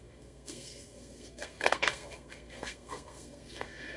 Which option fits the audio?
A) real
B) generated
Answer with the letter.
B